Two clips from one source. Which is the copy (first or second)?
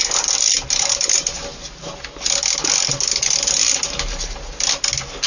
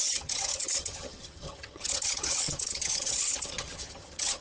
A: second